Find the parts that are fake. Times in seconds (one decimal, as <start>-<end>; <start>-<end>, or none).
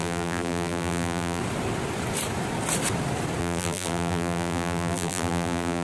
0.0-1.4; 3.4-5.8